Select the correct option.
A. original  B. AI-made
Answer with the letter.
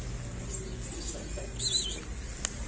A